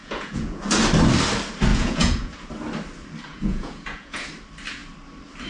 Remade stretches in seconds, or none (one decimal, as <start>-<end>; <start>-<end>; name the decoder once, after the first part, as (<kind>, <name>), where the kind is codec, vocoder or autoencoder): 0.0-0.6 (vocoder, Vocos); 1.7-2.3; 3.3-4.3